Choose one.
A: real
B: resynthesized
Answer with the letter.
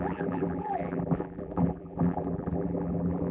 B